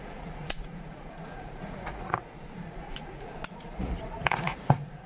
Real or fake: fake